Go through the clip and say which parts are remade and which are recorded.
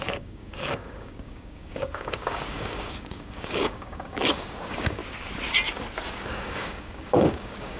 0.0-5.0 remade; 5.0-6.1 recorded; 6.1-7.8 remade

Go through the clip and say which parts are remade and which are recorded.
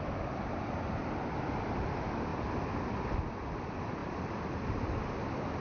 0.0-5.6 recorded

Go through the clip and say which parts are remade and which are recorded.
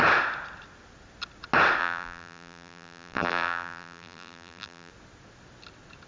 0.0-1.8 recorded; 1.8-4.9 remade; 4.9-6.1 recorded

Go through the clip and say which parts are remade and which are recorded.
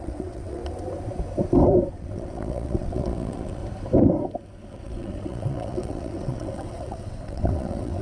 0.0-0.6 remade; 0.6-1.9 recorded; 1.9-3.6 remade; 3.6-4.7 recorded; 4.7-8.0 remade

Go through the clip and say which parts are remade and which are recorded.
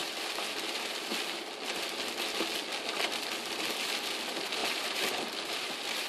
0.0-4.6 recorded; 4.6-6.1 remade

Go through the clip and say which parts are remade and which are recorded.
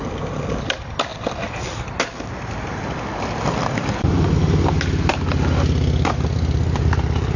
0.0-7.4 recorded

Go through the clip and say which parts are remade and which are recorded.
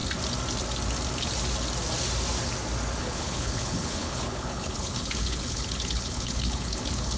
0.0-3.0 recorded; 3.0-7.2 remade